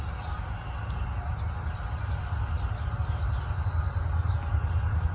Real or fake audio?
real